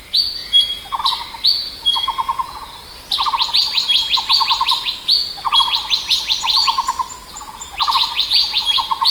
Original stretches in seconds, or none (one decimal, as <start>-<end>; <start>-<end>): 0.0-0.4; 1.0-1.6; 2.7-7.1